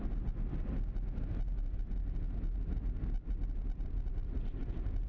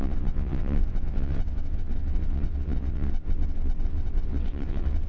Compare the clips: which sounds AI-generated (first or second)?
second